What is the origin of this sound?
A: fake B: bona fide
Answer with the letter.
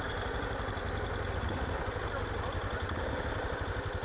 B